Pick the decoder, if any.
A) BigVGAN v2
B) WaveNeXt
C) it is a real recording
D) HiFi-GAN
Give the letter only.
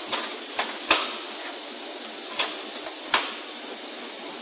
C